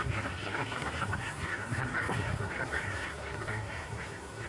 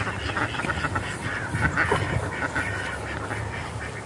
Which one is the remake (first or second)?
first